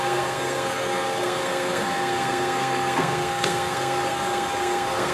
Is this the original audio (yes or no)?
no